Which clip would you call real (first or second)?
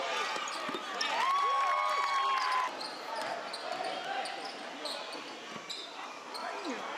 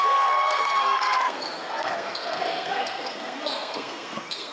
first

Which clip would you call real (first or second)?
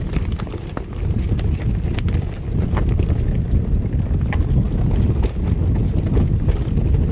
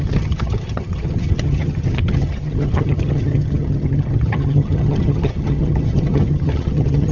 first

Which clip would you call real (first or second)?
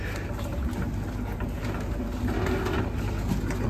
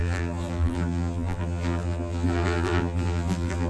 first